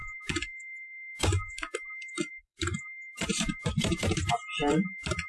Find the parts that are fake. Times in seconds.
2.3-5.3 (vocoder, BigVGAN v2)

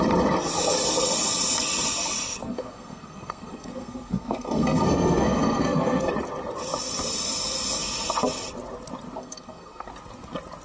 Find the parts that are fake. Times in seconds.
2.4-6.1 (codec, SNAC); 9.2-9.9

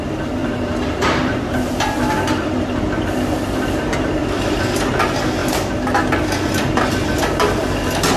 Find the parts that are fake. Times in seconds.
0.4-1.8 (vocoder, BigVGAN v2)

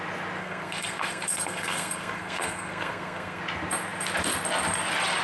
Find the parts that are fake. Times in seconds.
0.4-3.4 (codec, SNAC)

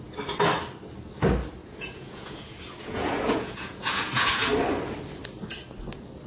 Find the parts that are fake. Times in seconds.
1.6-4.6 (vocoder, Vocos)

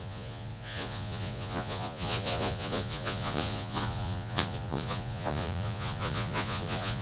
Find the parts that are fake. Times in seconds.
0.0-7.0 (vocoder, Vocos)

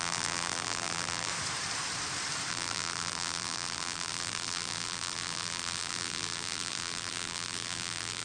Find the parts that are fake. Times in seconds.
0.0-1.3 (vocoder, BigVGAN v2); 2.5-8.2

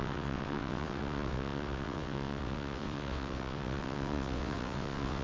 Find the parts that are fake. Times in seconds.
0.0-5.2 (vocoder, WaveNeXt)